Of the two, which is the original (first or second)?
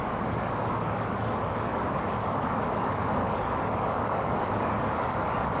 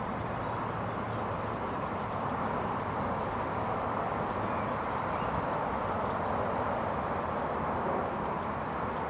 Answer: second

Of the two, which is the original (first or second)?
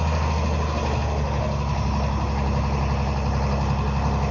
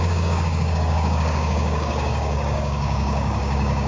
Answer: first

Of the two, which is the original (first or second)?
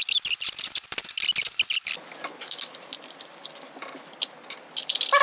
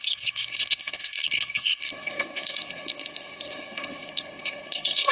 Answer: first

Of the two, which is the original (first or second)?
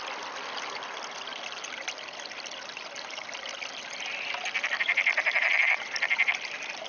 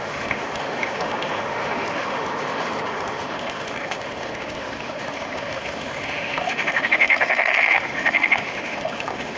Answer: first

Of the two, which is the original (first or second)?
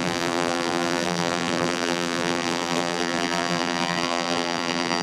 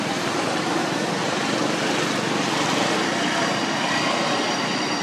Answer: second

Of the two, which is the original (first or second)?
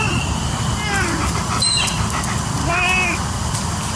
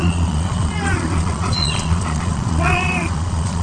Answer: first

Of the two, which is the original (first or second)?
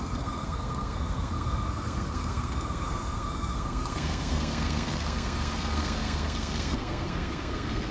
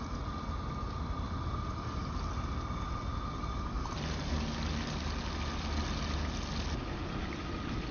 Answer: second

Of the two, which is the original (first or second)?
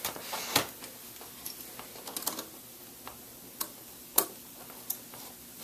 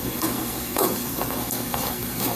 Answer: first